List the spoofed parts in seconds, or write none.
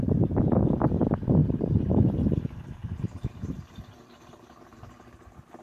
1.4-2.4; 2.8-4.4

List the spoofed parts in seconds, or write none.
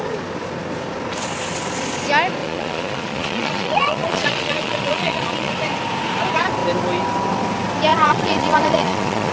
2.4-5.5; 7.9-9.3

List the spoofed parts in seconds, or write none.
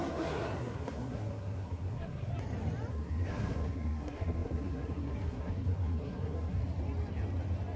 0.0-2.3; 2.9-6.6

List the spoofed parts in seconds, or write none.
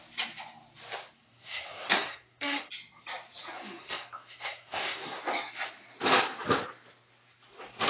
1.2-2.7; 3.8-5.2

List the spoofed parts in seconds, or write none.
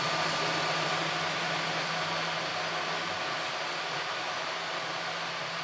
none